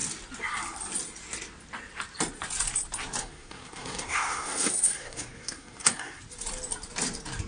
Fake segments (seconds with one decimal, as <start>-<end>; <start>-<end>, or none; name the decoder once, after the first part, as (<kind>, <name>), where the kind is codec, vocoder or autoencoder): 3.2-6.2 (codec, SNAC)